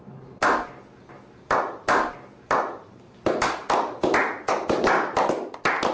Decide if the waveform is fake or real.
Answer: real